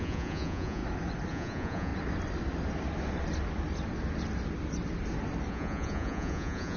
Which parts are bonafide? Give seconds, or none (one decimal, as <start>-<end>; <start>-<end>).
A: 0.8-1.3; 1.9-5.5